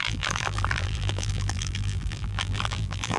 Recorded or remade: remade